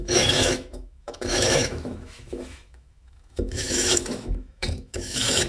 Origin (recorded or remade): remade